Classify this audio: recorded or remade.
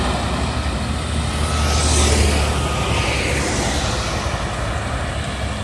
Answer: recorded